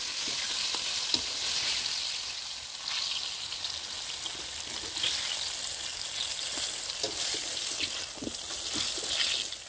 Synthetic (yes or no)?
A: no